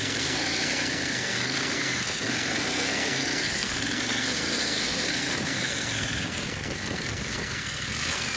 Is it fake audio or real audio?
fake